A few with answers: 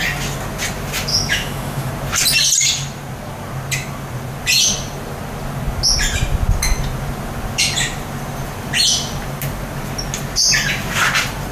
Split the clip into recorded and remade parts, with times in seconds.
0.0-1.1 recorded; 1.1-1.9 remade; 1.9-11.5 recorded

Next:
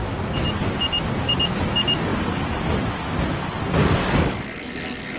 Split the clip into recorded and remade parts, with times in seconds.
0.0-5.2 recorded

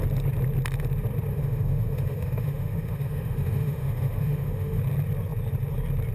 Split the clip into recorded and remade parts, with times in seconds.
0.0-1.3 recorded; 1.3-4.8 remade; 4.8-6.1 recorded

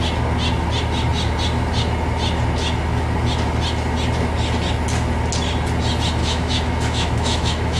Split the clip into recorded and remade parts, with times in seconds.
0.0-6.2 recorded; 6.2-7.8 remade

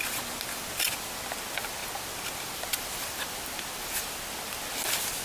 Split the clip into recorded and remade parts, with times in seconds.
0.0-5.2 recorded